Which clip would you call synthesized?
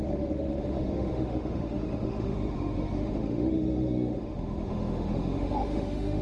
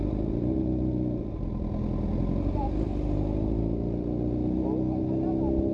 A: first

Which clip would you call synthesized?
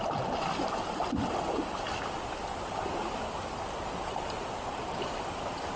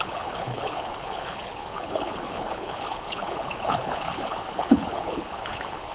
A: second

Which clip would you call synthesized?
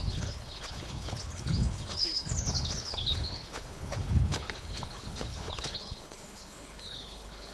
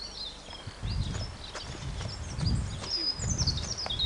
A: first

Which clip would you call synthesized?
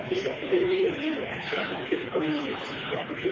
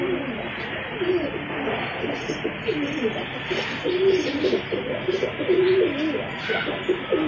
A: first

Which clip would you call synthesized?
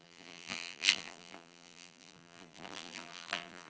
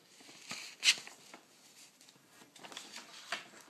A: first